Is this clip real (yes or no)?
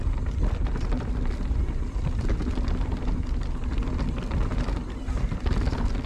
yes